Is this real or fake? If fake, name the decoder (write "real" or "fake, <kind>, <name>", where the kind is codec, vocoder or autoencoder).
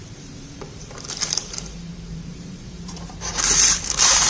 fake, vocoder, BigVGAN v2